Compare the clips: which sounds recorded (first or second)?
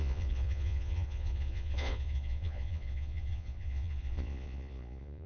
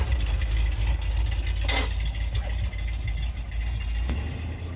second